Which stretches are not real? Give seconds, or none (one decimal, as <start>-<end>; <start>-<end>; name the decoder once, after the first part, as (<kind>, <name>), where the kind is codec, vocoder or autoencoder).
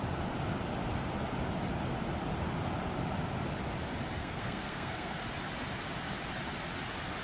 4.2-5.2 (codec, SNAC)